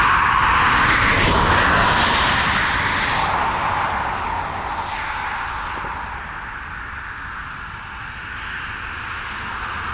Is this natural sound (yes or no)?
yes